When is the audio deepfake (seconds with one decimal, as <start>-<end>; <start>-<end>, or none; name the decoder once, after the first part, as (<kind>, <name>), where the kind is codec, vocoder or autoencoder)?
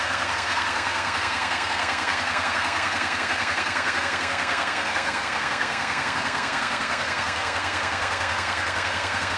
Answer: 0.0-9.4 (codec, SNAC)